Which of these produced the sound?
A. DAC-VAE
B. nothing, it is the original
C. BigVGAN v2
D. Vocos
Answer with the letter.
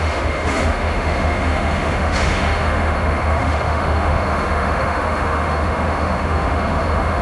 A